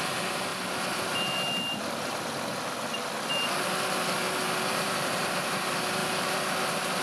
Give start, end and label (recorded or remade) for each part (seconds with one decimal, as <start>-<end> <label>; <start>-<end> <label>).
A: 0.0-0.5 remade; 0.5-4.7 recorded; 4.7-6.0 remade; 6.0-7.0 recorded